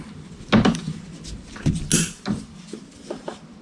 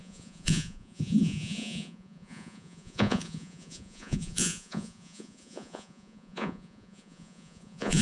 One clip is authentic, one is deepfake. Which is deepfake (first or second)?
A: second